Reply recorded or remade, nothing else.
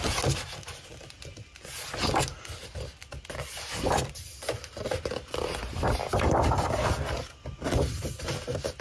recorded